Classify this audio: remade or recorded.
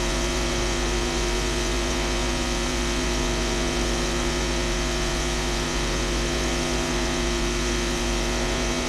remade